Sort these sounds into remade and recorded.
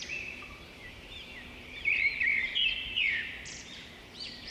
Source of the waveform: remade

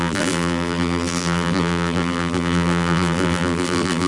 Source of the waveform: remade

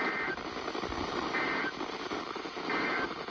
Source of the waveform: remade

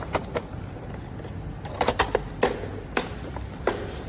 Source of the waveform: recorded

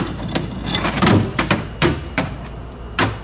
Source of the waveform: remade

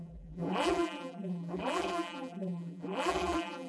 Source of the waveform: remade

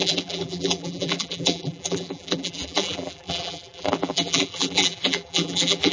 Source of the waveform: remade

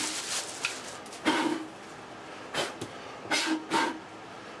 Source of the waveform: recorded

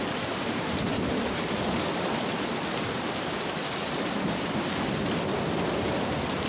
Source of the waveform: remade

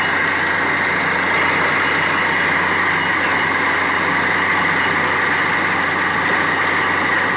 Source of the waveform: recorded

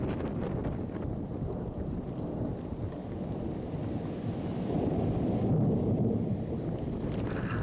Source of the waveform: recorded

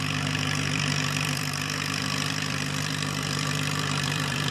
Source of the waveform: remade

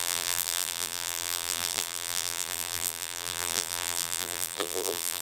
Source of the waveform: remade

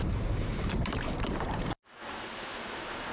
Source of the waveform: remade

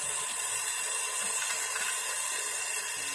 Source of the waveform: recorded